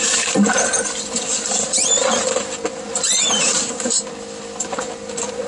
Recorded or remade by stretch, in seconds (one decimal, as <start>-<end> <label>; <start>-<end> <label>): 0.0-5.5 recorded

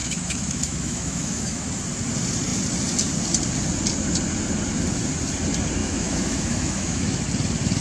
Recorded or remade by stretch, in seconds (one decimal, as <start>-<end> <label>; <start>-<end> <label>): 0.0-1.7 remade; 1.7-5.8 recorded; 5.8-7.2 remade; 7.2-7.8 recorded

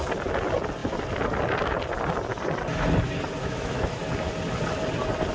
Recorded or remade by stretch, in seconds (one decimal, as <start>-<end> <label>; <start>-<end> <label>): 0.0-3.4 recorded; 3.4-4.0 remade; 4.0-5.3 recorded

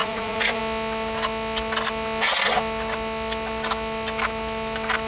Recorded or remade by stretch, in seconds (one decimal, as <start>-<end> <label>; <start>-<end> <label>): 0.0-0.6 remade; 0.6-5.1 recorded

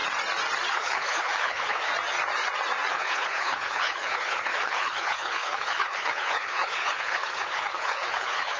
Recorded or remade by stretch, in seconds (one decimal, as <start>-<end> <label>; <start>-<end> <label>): 0.0-0.7 recorded; 0.7-1.9 remade; 1.9-2.9 recorded; 2.9-8.6 remade

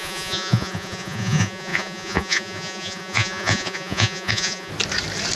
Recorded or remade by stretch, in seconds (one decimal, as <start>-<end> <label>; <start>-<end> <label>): 0.0-4.7 remade; 4.7-5.4 recorded